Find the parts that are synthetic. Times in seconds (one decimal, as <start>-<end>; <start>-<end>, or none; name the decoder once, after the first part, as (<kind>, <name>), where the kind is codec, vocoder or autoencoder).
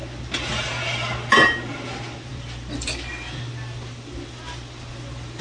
2.3-3.1 (vocoder, BigVGAN v2)